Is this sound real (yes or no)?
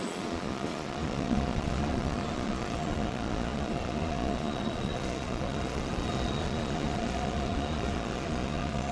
no